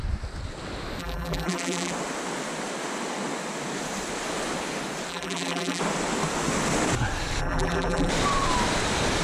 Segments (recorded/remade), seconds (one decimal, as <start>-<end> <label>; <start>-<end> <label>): 0.0-1.0 recorded; 1.0-1.9 remade; 1.9-5.1 recorded; 5.1-5.8 remade; 5.8-7.4 recorded; 7.4-8.1 remade; 8.1-9.2 recorded